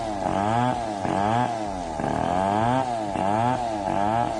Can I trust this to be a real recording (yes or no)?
yes